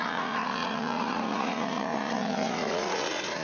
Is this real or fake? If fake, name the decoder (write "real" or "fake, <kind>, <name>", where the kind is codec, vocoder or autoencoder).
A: fake, vocoder, Vocos